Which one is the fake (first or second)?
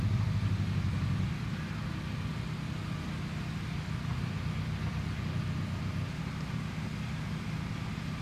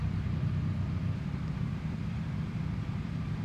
second